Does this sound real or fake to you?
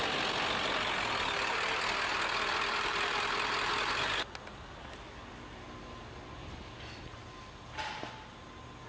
real